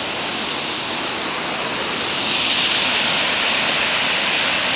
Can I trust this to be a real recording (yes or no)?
yes